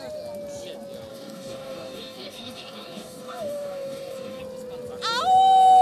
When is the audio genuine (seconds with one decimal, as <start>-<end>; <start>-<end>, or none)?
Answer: 0.0-1.1; 4.4-5.8